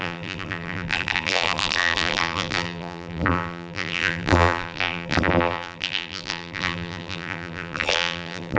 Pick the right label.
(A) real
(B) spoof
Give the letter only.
B